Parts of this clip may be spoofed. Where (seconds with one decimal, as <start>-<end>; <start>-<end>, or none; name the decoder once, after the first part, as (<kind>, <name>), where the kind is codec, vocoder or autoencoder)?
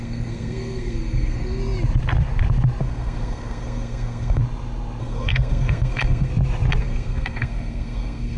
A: 0.0-1.6 (codec, SNAC); 2.8-4.4; 5.0-6.3; 6.8-8.4